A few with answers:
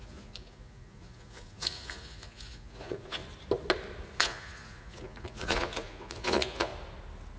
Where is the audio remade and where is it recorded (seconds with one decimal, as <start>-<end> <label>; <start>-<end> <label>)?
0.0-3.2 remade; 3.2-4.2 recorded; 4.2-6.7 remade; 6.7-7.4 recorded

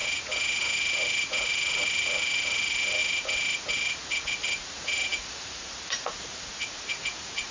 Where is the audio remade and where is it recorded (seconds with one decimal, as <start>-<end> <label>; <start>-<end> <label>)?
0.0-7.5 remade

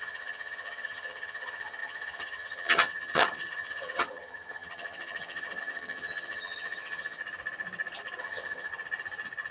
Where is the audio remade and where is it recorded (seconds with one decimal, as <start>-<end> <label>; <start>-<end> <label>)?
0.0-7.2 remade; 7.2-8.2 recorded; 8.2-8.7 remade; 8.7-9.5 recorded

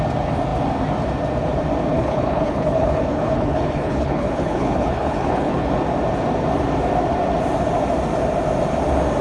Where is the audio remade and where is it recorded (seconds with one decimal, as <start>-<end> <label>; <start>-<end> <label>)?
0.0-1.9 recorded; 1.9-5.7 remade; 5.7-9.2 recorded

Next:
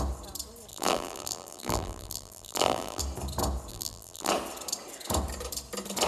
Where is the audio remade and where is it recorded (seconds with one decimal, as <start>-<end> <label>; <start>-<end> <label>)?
0.0-0.7 recorded; 0.7-3.0 remade; 3.0-3.7 recorded; 3.7-4.3 remade; 4.3-6.1 recorded

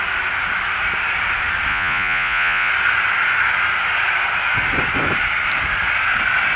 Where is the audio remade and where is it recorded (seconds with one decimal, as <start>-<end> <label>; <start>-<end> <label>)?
0.0-1.7 recorded; 1.7-2.7 remade; 2.7-6.6 recorded